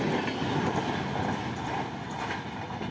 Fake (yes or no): no